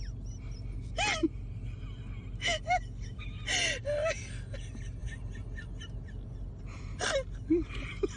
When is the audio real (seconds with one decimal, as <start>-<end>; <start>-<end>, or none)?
0.0-8.2